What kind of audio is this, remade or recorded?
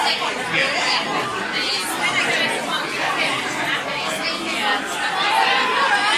recorded